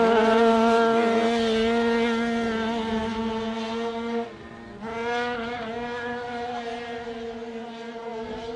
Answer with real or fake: real